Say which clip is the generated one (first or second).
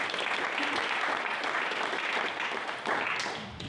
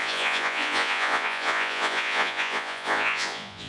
second